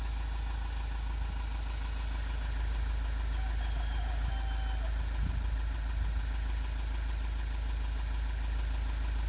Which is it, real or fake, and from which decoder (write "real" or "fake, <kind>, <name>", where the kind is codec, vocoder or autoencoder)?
real